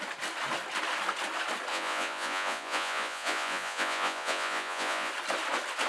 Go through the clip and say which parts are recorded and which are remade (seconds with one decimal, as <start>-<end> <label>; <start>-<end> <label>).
0.0-1.7 recorded; 1.7-5.1 remade; 5.1-5.9 recorded

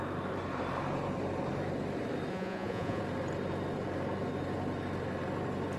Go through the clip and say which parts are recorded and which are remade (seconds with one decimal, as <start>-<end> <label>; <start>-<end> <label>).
0.0-2.3 recorded; 2.3-3.0 remade; 3.0-5.8 recorded

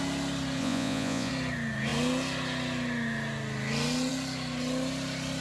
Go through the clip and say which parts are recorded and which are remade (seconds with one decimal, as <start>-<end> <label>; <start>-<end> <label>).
0.0-0.6 recorded; 0.6-1.3 remade; 1.3-5.4 recorded

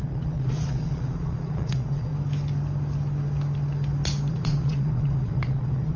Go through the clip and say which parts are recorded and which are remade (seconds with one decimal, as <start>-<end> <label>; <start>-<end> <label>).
0.0-2.1 remade; 2.1-4.3 recorded; 4.3-6.0 remade

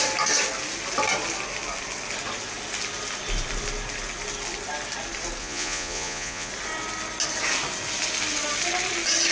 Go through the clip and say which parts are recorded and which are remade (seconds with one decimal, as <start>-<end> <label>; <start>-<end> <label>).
0.0-5.4 recorded; 5.4-6.5 remade; 6.5-9.3 recorded

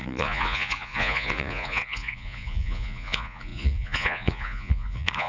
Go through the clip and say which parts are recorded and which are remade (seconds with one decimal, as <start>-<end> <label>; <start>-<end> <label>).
0.0-5.3 remade

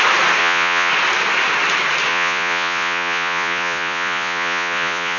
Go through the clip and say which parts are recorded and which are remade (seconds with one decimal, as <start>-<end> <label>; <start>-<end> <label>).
0.0-0.4 recorded; 0.4-0.9 remade; 0.9-2.1 recorded; 2.1-5.2 remade

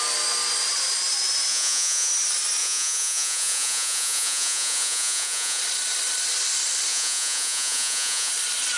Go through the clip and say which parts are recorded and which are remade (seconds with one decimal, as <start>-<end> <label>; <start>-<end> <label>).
0.0-1.5 recorded; 1.5-2.1 remade; 2.1-2.6 recorded; 2.6-5.6 remade; 5.6-6.9 recorded; 6.9-8.3 remade; 8.3-8.8 recorded